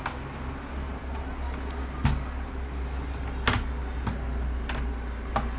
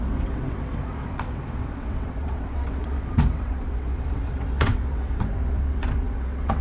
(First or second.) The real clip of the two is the first